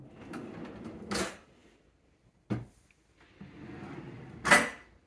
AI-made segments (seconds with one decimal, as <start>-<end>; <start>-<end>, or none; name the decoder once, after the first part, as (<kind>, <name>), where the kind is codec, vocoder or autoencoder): none